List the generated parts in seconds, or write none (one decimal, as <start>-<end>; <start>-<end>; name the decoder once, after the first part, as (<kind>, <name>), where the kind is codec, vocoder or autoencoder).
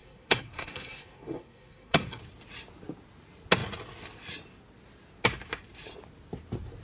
0.0-2.2 (codec, SNAC)